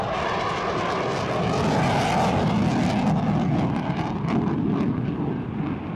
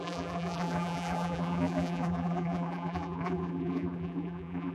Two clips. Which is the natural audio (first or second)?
first